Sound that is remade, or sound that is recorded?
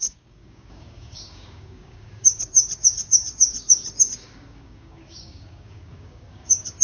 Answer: remade